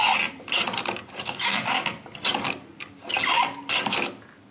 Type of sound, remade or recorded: recorded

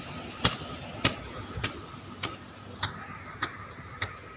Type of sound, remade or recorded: recorded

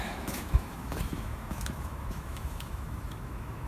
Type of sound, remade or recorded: remade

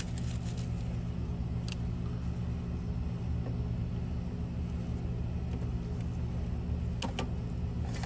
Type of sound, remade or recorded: recorded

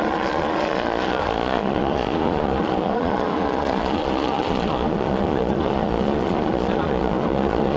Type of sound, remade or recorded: remade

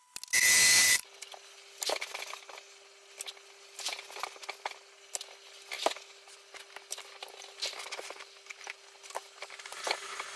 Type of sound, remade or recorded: recorded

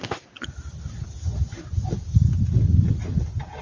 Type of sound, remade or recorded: recorded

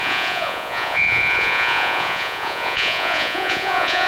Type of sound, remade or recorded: remade